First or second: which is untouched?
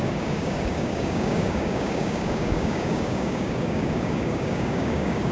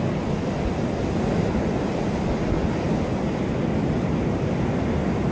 second